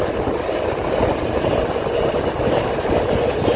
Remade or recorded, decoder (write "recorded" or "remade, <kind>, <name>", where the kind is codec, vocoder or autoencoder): recorded